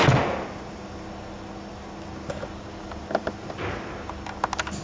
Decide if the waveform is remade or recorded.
recorded